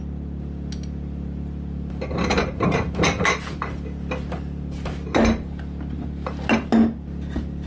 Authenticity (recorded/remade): recorded